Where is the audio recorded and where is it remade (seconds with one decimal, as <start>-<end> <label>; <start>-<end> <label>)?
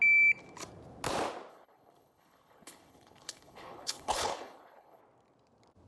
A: 0.0-1.5 recorded; 1.5-5.0 remade; 5.0-5.9 recorded